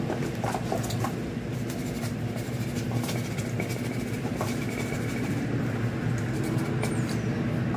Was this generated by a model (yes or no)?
no